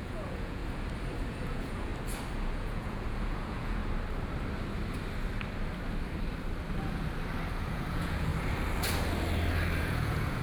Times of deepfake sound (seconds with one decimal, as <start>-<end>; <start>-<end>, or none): 0.0-0.6; 1.3-1.9; 2.6-3.8; 7.5-8.3; 9.8-10.4